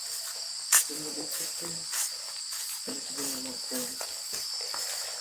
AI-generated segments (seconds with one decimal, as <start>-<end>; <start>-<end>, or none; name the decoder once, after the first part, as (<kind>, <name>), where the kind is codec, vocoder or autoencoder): none